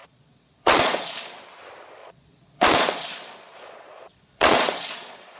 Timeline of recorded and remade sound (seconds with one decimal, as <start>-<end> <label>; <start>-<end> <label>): 0.0-1.4 remade; 1.4-2.0 recorded; 2.0-5.4 remade